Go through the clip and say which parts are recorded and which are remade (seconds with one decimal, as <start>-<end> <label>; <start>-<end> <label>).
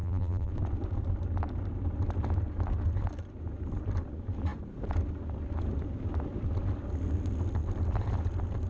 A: 0.0-0.5 remade; 0.5-8.7 recorded